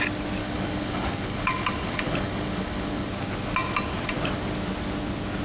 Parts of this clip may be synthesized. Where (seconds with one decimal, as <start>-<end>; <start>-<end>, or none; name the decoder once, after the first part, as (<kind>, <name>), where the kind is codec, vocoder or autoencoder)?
0.4-3.1 (codec, DAC)